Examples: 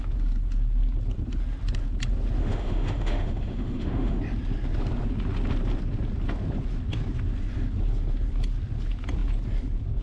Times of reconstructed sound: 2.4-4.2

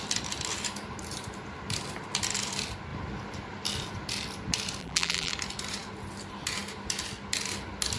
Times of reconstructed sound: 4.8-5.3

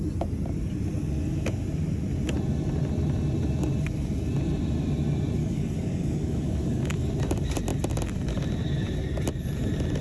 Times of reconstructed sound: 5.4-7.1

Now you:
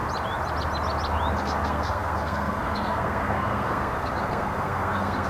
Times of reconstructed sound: 1.4-5.3

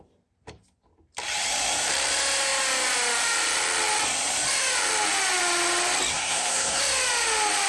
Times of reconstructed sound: 6.1-6.8

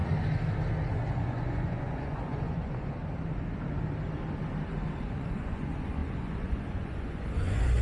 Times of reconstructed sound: 1.1-3.0; 5.0-7.8